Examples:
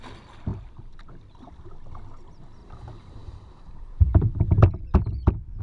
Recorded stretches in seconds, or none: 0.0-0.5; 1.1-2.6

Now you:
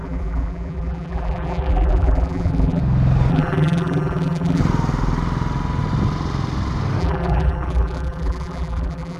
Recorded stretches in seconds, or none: 2.8-3.3; 4.6-7.0

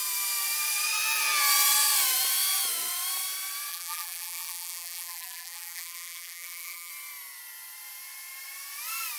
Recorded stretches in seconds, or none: 0.0-3.7; 6.9-9.2

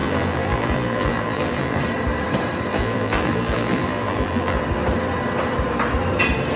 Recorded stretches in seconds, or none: 1.8-2.7; 4.6-6.6

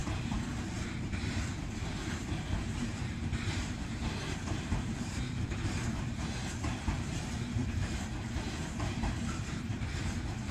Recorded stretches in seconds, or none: none

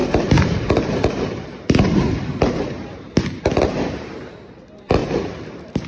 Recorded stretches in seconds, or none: 3.5-5.0

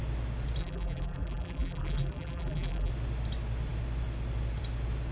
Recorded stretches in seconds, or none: 0.0-0.6; 2.9-5.1

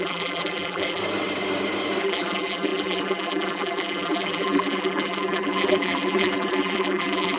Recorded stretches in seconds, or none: 1.0-2.0